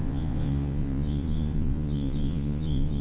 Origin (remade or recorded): remade